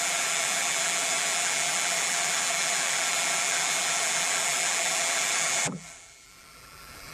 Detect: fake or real fake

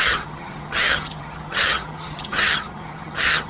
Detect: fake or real fake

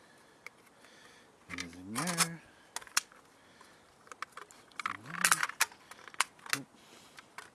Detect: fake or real real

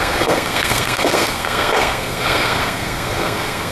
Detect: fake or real fake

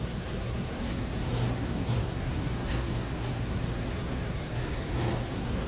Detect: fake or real fake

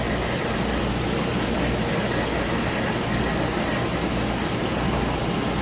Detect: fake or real real